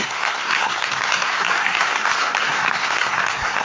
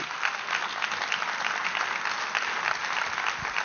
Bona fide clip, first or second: second